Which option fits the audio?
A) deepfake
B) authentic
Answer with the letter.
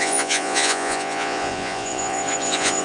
A